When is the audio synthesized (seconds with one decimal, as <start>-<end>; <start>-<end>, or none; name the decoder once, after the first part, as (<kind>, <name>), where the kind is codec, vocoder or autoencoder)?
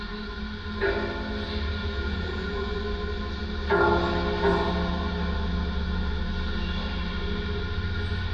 1.8-2.7 (vocoder, Vocos)